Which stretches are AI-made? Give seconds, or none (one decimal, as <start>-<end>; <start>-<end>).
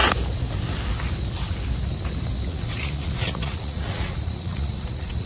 2.5-5.3